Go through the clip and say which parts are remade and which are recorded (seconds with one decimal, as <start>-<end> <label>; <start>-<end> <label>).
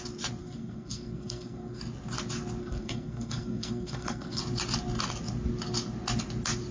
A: 0.0-0.4 recorded; 0.4-1.8 remade; 1.8-2.6 recorded; 2.6-4.4 remade; 4.4-6.7 recorded